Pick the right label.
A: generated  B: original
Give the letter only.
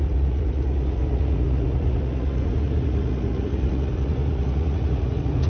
A